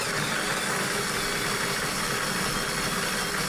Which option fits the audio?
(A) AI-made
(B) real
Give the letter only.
B